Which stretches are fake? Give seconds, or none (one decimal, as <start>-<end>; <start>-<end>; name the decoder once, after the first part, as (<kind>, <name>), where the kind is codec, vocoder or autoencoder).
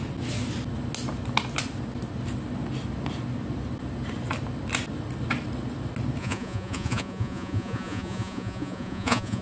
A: 6.2-9.4 (vocoder, Vocos)